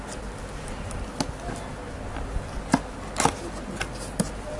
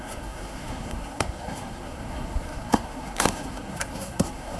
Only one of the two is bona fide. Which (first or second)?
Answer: first